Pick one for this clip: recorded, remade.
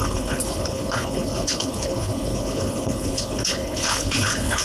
remade